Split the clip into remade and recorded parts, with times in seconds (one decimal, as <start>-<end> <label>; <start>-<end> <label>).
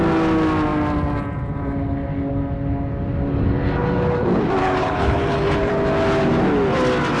0.0-4.6 recorded; 4.6-5.7 remade; 5.7-7.2 recorded